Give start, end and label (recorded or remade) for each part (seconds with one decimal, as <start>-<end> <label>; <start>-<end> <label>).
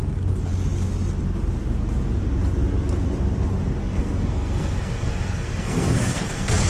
0.0-3.8 recorded; 3.8-6.7 remade